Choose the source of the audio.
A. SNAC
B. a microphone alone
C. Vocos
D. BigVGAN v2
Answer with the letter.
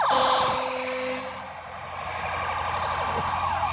B